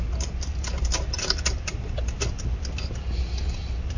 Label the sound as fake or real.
real